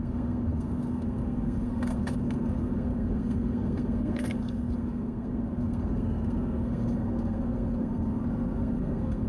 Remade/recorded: remade